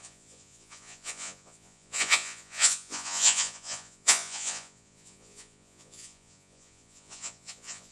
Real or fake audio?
fake